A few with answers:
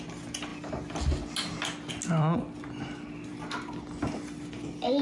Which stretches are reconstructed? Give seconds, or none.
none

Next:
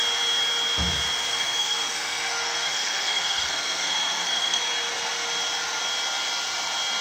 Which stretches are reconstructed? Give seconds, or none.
1.3-4.6 (codec, SNAC)

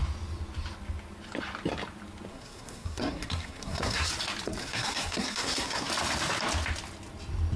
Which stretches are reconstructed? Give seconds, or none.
2.3-4.1 (codec, SNAC); 4.6-5.9

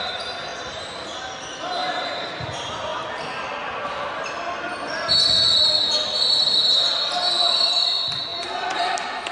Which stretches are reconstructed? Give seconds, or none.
none